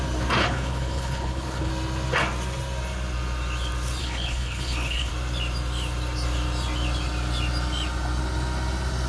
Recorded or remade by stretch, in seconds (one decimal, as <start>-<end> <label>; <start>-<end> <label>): 0.0-0.4 recorded; 0.4-1.7 remade; 1.7-4.0 recorded; 4.0-5.1 remade; 5.1-9.1 recorded